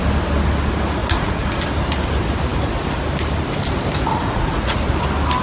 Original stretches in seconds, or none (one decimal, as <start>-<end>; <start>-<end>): 0.0-1.0; 1.6-4.2; 4.8-5.4